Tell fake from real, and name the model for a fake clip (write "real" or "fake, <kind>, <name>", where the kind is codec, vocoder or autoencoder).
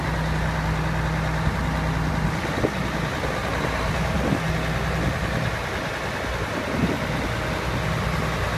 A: real